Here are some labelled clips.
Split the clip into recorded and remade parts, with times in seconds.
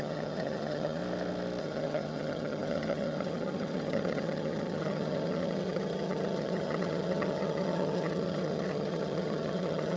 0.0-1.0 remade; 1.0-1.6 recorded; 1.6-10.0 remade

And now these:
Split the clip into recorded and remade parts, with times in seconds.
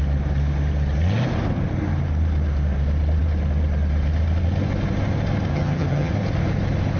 0.0-5.5 recorded; 5.5-6.1 remade; 6.1-7.0 recorded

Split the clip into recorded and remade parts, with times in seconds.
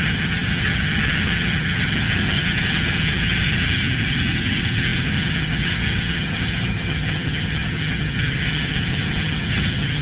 0.0-10.0 remade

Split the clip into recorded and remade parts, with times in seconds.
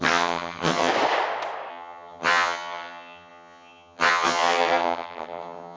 0.0-0.9 remade; 0.9-1.7 recorded; 1.7-5.8 remade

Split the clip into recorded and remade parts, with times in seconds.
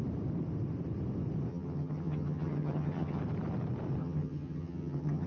0.0-1.5 recorded; 1.5-3.2 remade; 3.2-4.0 recorded; 4.0-5.3 remade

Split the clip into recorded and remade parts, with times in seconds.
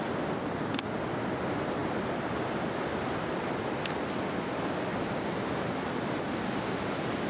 0.0-7.3 recorded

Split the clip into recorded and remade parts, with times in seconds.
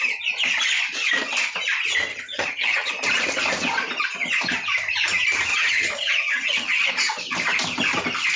0.0-2.1 recorded; 2.1-2.9 remade; 2.9-5.5 recorded; 5.5-6.9 remade; 6.9-8.4 recorded